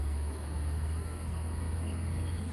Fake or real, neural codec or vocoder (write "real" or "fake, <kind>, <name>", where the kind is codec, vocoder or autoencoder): fake, codec, SNAC